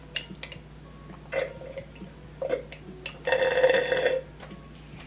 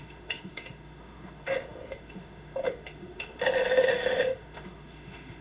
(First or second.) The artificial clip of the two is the second